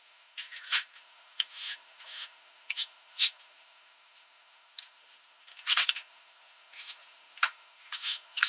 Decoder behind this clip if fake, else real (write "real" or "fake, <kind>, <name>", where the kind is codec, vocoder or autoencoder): fake, autoencoder, DAC-VAE